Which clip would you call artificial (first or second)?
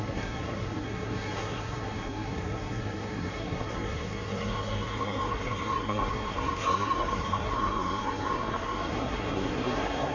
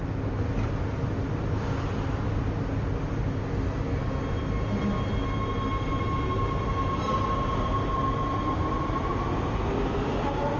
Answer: first